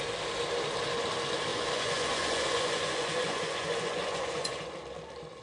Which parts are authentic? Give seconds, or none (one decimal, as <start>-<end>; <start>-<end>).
0.0-1.5; 4.7-5.4